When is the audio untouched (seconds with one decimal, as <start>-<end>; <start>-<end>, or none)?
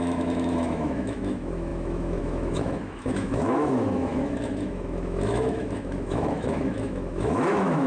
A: none